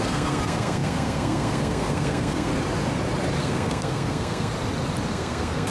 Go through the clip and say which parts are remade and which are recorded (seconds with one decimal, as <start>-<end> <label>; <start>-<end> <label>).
0.0-2.5 remade; 2.5-3.4 recorded; 3.4-4.5 remade; 4.5-5.1 recorded; 5.1-5.7 remade